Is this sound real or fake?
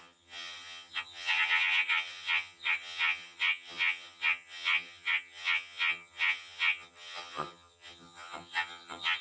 fake